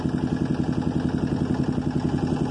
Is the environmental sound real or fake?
real